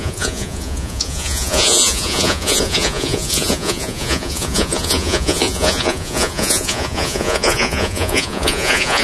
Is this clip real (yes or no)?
no